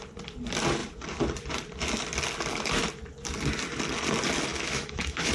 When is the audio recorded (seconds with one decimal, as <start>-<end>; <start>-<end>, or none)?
0.0-4.5